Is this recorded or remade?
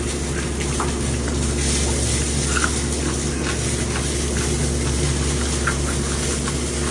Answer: recorded